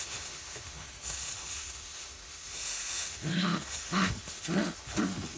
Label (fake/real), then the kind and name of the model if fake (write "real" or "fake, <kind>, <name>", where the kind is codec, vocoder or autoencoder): fake, autoencoder, DAC-VAE